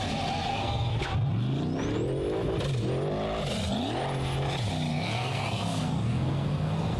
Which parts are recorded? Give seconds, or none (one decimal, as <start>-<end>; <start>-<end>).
0.0-0.5; 1.0-4.9